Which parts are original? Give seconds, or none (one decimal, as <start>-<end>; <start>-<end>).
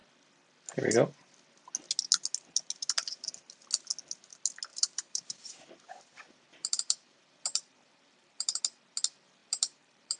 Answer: 0.0-4.7; 8.6-9.4